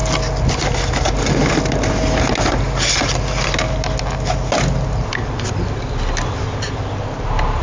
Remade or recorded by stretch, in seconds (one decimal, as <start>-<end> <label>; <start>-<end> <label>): 0.0-7.6 recorded